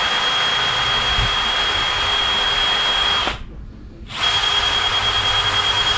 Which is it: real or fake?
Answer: real